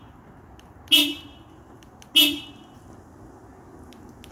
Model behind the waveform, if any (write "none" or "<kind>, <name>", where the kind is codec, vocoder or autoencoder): none